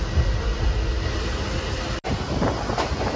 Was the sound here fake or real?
real